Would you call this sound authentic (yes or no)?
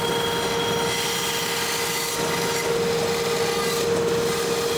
yes